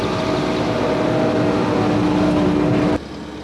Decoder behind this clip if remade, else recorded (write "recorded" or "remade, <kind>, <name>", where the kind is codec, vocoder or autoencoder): recorded